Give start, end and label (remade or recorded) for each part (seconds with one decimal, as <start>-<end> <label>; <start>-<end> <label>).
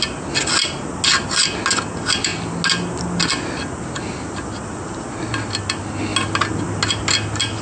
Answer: 0.0-7.6 recorded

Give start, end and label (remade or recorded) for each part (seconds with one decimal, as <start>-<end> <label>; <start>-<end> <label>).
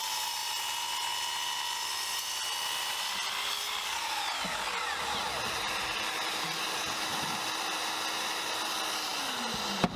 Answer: 0.0-10.0 recorded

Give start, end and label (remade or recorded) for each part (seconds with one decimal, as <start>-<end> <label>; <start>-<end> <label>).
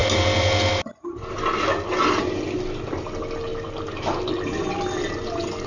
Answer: 0.0-5.7 recorded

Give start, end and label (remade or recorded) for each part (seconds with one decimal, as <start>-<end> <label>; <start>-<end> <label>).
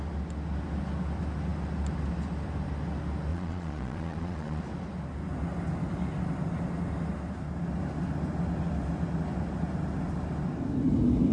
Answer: 0.0-3.3 recorded; 3.3-4.6 remade; 4.6-11.3 recorded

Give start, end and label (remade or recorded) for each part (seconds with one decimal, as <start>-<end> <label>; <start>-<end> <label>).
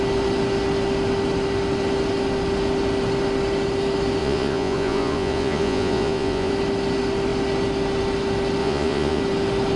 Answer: 0.0-4.2 recorded; 4.2-6.5 remade; 6.5-8.6 recorded; 8.6-9.2 remade; 9.2-9.8 recorded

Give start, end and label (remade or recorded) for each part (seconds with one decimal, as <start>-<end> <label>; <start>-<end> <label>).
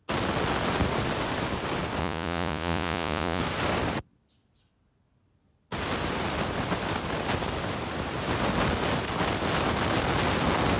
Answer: 0.0-2.0 recorded; 2.0-3.4 remade; 3.4-10.8 recorded